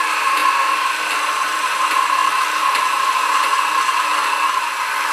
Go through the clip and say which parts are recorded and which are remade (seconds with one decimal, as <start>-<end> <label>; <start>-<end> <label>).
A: 0.0-0.4 remade; 0.4-1.2 recorded; 1.2-2.2 remade; 2.2-2.9 recorded; 2.9-3.5 remade; 3.5-5.1 recorded